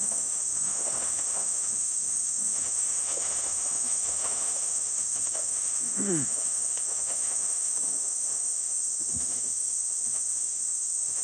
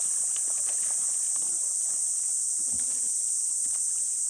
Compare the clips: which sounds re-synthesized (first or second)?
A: first